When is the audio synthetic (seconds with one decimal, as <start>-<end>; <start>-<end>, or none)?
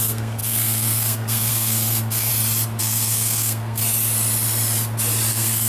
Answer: 0.0-2.3; 2.8-3.8; 5.3-5.7